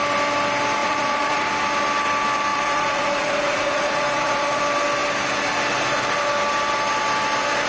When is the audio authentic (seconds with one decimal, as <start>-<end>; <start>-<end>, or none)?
0.0-0.8; 1.5-2.5; 4.6-7.7